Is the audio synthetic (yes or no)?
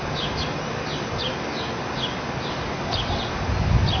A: no